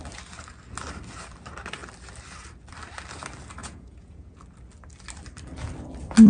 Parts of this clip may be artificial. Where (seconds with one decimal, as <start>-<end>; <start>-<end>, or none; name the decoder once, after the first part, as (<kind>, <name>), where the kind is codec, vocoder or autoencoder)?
3.6-4.4 (vocoder, Vocos)